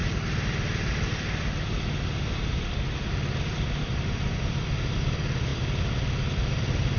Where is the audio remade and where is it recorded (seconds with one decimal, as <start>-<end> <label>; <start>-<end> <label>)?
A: 0.0-3.4 recorded; 3.4-5.5 remade; 5.5-6.5 recorded; 6.5-7.0 remade

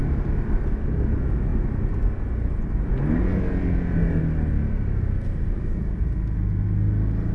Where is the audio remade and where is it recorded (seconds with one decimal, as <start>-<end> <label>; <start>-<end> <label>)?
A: 0.0-7.3 recorded

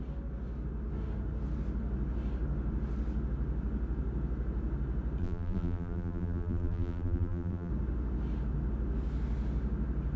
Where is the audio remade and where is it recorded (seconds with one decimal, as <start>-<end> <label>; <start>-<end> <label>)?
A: 0.0-5.2 recorded; 5.2-7.7 remade; 7.7-10.2 recorded

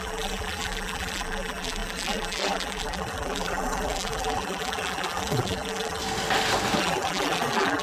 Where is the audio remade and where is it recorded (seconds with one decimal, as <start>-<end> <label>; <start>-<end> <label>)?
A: 0.0-6.0 remade; 6.0-6.8 recorded; 6.8-7.8 remade

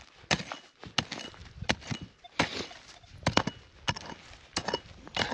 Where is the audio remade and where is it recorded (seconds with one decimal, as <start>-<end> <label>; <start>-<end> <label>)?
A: 0.0-5.3 recorded